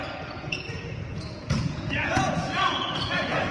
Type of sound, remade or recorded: remade